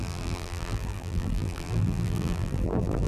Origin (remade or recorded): remade